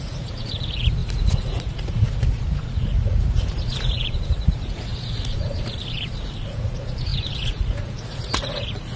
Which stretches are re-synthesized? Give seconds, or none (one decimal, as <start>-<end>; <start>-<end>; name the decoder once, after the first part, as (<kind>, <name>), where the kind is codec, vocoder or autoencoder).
0.0-9.0 (vocoder, Vocos)